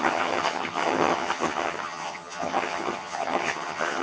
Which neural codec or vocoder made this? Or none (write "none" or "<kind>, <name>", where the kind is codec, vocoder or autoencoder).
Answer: vocoder, HiFi-GAN